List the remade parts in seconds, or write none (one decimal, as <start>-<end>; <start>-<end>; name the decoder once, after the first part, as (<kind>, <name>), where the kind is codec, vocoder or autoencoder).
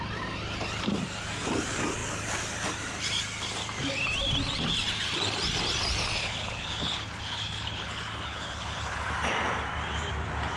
6.2-9.1 (codec, HILCodec)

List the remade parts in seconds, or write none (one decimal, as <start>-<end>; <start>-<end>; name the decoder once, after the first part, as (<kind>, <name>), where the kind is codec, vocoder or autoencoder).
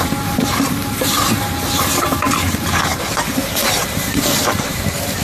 0.0-5.2 (vocoder, BigVGAN v2)